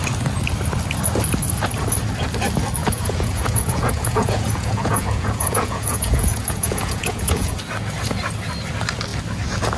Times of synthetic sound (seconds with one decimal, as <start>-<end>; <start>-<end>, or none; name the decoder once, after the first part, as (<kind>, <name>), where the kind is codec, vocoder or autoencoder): 2.8-7.6 (vocoder, Vocos)